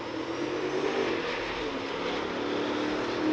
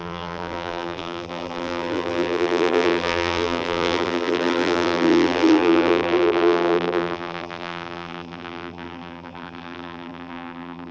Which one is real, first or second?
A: first